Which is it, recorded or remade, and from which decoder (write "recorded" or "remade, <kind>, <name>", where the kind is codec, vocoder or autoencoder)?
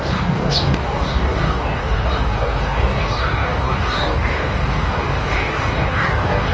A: remade, codec, DAC